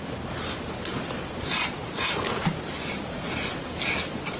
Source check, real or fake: real